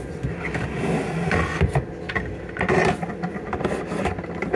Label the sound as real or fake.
real